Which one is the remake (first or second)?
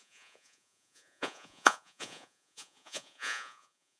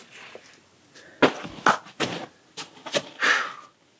first